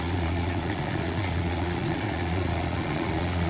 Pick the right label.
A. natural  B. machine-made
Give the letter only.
B